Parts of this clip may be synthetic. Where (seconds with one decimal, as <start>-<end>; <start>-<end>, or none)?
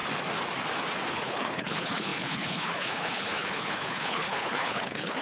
1.1-5.2